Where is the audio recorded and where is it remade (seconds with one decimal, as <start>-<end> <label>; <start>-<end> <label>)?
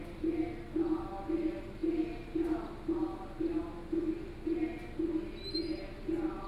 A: 0.0-6.5 recorded